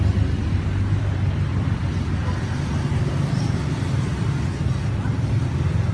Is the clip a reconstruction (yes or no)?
no